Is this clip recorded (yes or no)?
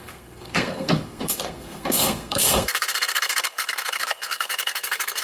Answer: no